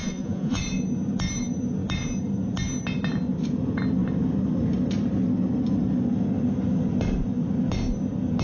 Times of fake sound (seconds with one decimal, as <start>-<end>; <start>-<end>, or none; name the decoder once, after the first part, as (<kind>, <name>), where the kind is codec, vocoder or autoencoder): 0.0-0.6 (vocoder, Vocos)